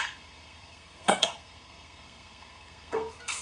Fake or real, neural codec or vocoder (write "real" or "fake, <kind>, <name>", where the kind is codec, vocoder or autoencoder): fake, codec, SNAC